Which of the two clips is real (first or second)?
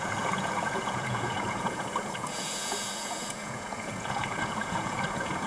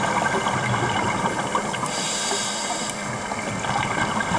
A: second